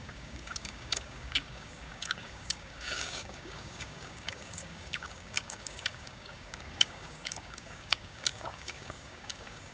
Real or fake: fake